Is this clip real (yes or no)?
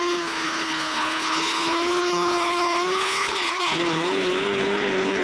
no